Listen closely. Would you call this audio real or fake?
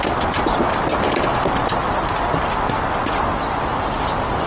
real